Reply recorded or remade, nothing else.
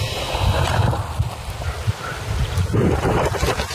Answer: recorded